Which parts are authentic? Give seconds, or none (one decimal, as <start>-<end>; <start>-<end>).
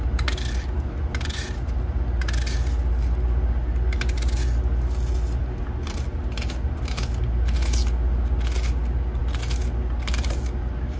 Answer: 0.0-11.0